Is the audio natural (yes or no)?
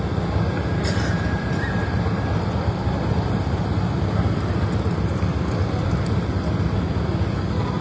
yes